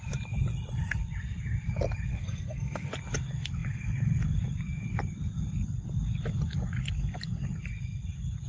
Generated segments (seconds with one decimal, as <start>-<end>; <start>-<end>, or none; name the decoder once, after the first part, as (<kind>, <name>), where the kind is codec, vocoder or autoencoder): 2.1-2.9 (codec, SNAC)